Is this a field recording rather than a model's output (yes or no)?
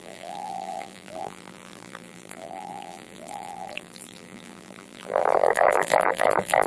no